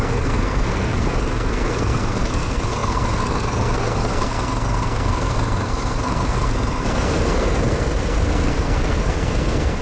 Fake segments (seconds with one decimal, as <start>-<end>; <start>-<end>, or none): 0.0-9.8